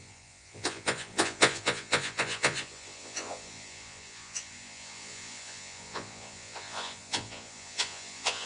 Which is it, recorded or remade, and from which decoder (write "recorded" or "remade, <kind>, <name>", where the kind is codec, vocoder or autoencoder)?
remade, vocoder, Vocos